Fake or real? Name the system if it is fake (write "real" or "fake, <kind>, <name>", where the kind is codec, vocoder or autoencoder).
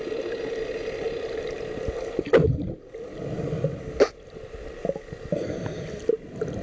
real